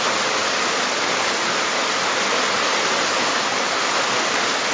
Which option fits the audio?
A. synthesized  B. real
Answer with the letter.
B